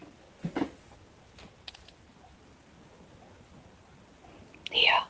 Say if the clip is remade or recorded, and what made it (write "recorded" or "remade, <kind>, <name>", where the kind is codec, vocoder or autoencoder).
recorded